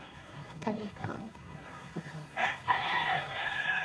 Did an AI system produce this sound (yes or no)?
yes